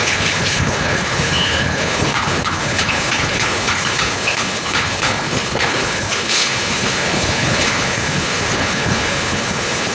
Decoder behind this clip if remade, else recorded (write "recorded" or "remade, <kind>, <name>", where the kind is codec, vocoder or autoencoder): remade, codec, HILCodec